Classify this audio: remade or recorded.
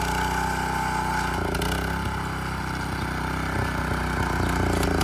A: recorded